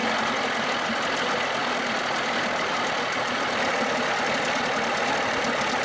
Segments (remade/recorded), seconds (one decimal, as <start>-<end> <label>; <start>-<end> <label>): 0.0-1.6 recorded; 1.6-5.1 remade; 5.1-5.8 recorded